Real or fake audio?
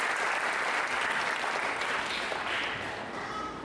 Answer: real